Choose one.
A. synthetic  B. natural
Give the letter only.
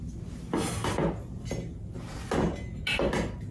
B